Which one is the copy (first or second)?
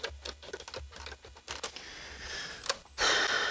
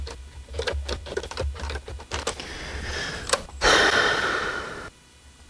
second